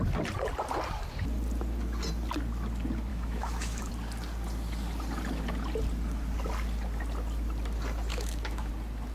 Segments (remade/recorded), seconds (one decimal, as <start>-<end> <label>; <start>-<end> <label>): 0.0-3.1 recorded; 3.1-3.9 remade; 3.9-8.1 recorded; 8.1-8.7 remade; 8.7-9.1 recorded